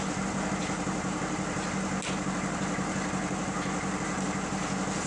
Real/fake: real